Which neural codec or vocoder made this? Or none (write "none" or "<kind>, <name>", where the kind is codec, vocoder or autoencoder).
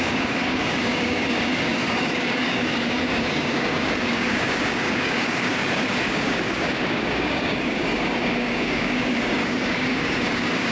codec, DAC